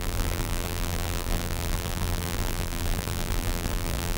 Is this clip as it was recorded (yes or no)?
no